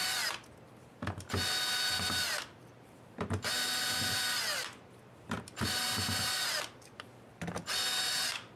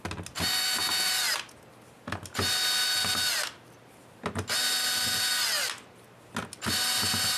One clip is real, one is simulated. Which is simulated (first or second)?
first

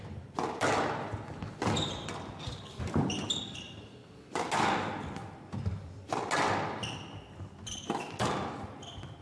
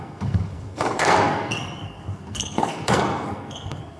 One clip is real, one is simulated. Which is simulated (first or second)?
second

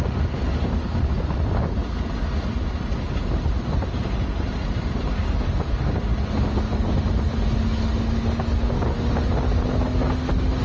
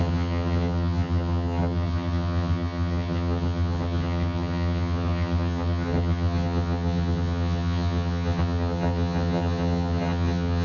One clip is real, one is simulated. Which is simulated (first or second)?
second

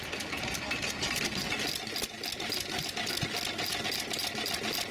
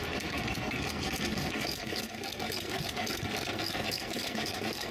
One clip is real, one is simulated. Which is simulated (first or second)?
second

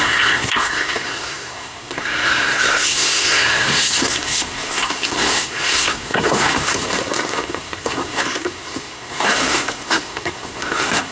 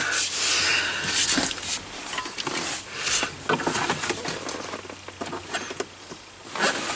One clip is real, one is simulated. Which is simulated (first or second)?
first